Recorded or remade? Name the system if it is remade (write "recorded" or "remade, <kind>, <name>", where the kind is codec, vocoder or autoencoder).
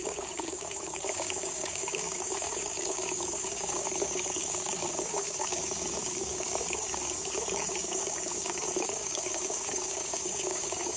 remade, codec, DAC